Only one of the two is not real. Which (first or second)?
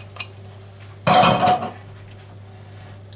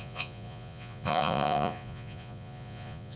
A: second